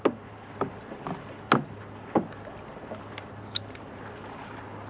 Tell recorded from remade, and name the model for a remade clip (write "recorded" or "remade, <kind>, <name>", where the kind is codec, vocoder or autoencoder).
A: recorded